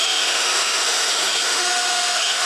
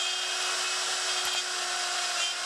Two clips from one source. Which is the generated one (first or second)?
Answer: first